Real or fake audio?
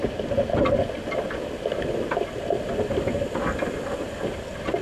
real